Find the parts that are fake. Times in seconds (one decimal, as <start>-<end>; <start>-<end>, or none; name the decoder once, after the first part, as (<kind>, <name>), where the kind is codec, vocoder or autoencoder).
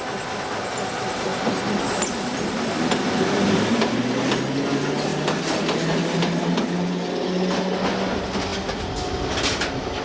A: 1.3-3.9 (vocoder, BigVGAN v2)